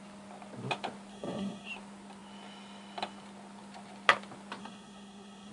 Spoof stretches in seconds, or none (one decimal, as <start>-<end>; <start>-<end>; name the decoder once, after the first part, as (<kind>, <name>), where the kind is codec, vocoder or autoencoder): 1.1-1.7 (codec, SNAC); 4.6-5.5